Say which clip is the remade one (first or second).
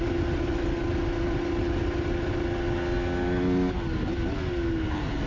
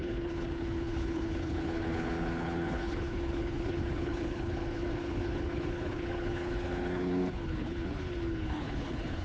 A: second